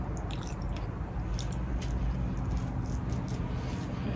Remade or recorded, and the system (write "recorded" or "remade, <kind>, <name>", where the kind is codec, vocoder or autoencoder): recorded